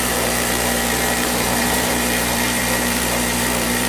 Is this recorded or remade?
remade